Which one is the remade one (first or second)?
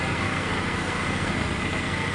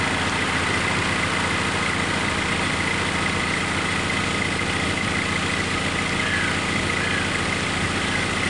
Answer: first